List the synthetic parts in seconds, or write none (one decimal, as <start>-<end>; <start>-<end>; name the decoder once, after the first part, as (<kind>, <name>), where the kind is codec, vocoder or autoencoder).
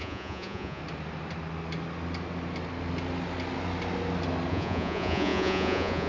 0.0-0.8 (vocoder, Vocos); 4.5-6.1